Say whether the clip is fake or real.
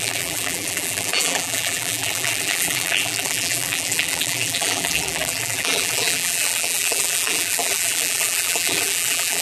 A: fake